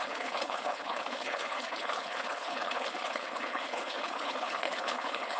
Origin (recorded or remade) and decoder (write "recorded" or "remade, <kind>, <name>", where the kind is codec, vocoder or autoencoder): remade, codec, HILCodec